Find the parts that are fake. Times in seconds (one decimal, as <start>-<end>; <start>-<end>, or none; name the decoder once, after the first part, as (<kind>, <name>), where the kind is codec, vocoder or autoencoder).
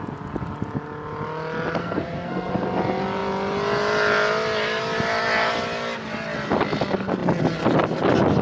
1.8-2.5 (codec, SNAC)